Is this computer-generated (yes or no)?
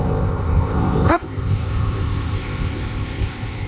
yes